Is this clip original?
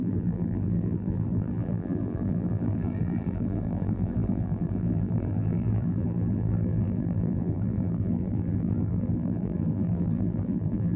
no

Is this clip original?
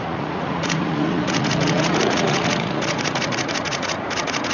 no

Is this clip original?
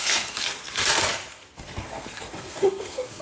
no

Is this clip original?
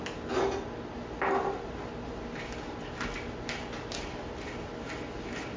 yes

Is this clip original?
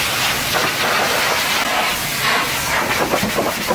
yes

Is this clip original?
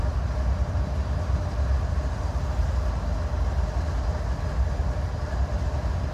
yes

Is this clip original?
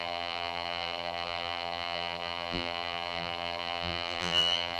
no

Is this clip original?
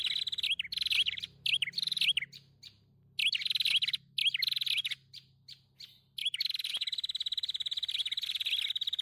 yes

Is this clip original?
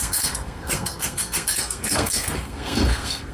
no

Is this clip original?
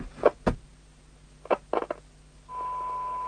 yes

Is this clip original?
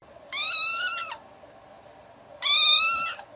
yes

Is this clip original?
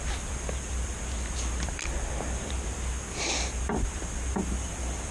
yes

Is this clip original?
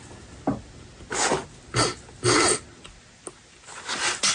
yes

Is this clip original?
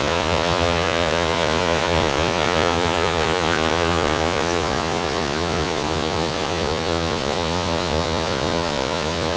no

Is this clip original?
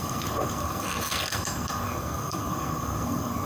no